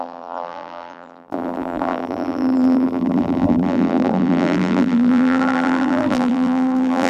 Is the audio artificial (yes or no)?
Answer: yes